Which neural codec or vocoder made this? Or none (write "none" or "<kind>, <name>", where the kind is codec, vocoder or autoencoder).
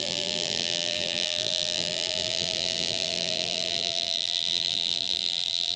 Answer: vocoder, BigVGAN v2